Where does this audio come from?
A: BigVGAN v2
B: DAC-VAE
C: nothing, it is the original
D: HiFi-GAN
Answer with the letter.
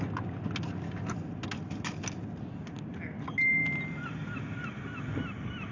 C